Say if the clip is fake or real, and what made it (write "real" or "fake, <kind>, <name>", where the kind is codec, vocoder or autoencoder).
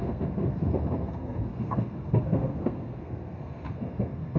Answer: fake, codec, SNAC